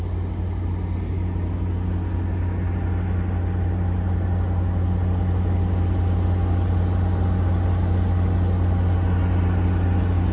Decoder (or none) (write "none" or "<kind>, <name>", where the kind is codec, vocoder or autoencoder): none